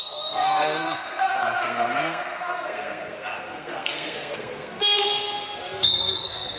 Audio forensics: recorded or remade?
remade